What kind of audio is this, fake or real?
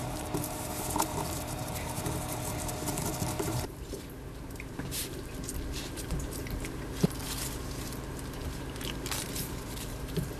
fake